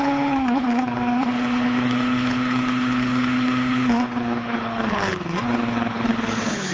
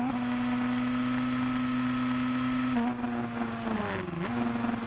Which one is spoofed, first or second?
first